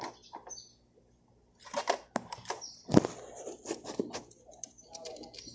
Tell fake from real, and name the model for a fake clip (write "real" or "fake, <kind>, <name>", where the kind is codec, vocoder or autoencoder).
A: real